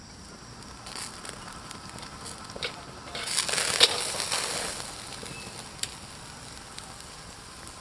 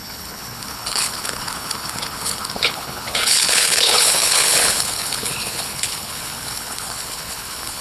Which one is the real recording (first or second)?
first